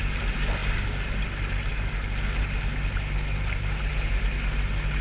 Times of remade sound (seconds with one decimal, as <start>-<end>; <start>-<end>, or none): none